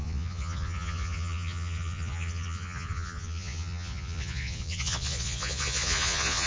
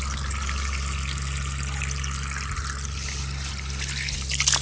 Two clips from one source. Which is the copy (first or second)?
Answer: first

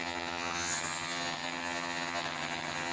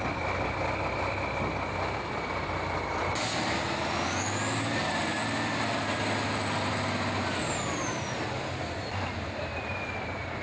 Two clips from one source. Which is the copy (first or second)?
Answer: first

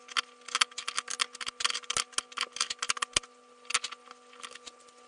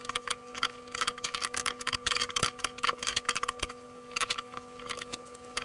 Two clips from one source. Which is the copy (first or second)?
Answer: second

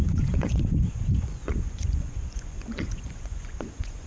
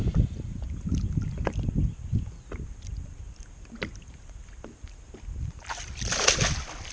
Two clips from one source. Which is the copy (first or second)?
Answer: first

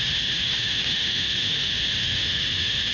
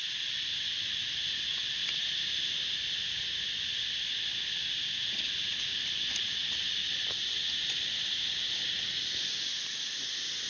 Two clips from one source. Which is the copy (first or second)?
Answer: first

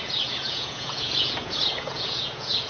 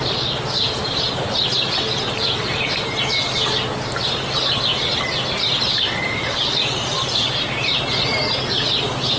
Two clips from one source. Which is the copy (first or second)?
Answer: first